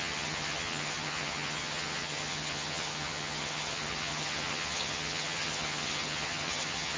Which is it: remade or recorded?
remade